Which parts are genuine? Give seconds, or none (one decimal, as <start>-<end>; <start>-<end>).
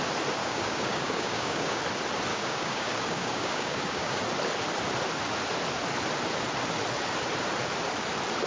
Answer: 0.0-0.4; 1.8-2.3; 4.2-8.5